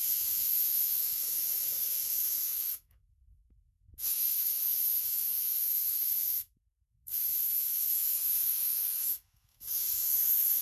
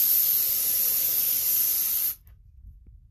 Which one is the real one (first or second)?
second